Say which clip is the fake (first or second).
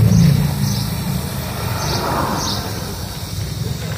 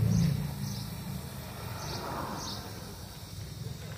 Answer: first